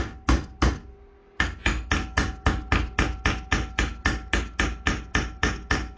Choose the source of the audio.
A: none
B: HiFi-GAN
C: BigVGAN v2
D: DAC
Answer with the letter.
A